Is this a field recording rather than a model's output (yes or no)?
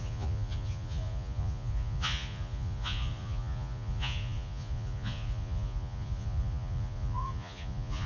no